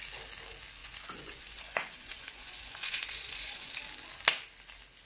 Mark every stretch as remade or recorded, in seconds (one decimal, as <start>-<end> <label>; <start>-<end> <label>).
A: 0.0-0.8 recorded; 0.8-3.7 remade; 3.7-5.1 recorded